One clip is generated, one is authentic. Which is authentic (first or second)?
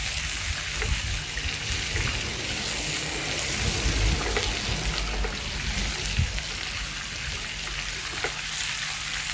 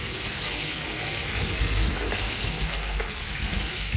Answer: first